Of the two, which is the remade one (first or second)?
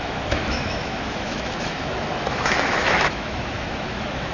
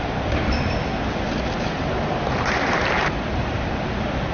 first